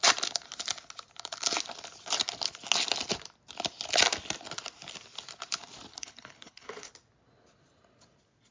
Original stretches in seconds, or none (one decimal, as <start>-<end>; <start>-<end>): 0.0-5.9; 6.9-8.5